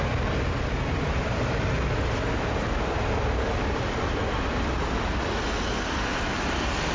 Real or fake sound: real